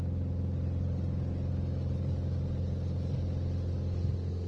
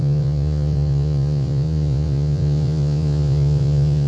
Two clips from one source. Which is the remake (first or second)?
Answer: second